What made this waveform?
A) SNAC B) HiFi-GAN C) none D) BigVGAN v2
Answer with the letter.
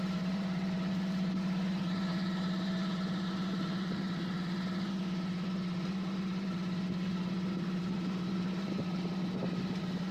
D